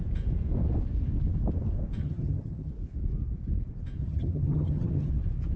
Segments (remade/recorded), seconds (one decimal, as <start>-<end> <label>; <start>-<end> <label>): 0.0-2.0 recorded; 2.0-2.7 remade; 2.7-4.0 recorded; 4.0-5.1 remade; 5.1-5.6 recorded